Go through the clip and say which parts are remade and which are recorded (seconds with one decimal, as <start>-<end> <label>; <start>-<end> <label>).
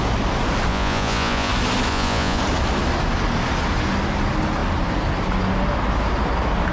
0.0-0.7 recorded; 0.7-1.5 remade; 1.5-1.9 recorded; 1.9-2.4 remade; 2.4-6.7 recorded